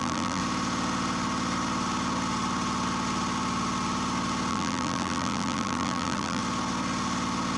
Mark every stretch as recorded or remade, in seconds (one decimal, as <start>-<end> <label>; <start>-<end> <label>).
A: 0.0-0.4 remade; 0.4-4.5 recorded; 4.5-6.4 remade; 6.4-7.6 recorded